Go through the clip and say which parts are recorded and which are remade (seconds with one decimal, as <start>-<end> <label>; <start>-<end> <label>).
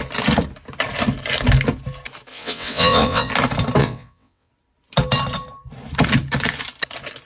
0.0-2.3 recorded; 2.3-3.3 remade; 3.3-3.8 recorded; 3.8-4.5 remade; 4.5-7.3 recorded